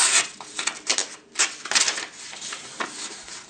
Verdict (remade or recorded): recorded